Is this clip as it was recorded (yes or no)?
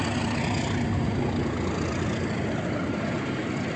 yes